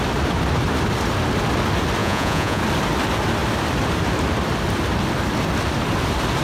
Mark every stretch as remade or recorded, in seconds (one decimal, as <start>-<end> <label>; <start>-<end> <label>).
0.0-2.0 recorded; 2.0-2.6 remade; 2.6-6.4 recorded